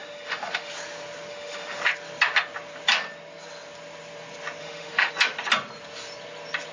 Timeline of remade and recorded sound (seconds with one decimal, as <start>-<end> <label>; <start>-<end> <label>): 0.0-0.7 remade; 0.7-1.3 recorded; 1.3-1.8 remade; 1.8-4.6 recorded; 4.6-5.1 remade; 5.1-6.7 recorded